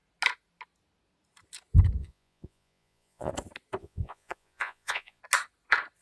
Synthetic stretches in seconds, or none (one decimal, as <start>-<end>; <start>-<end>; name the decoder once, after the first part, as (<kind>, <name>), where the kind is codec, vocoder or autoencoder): 2.0-3.3 (vocoder, Vocos); 3.8-5.2